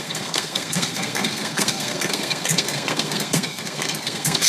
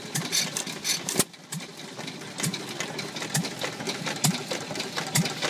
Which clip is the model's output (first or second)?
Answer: first